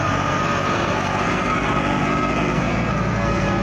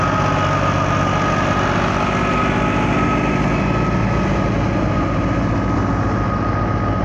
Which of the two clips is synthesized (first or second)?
first